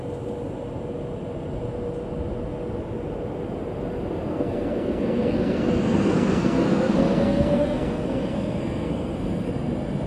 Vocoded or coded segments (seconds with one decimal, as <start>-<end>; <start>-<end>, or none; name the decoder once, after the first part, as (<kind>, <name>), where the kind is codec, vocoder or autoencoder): 4.3-9.5 (codec, SNAC)